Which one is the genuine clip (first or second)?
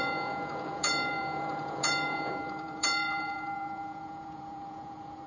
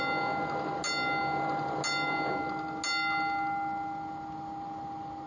second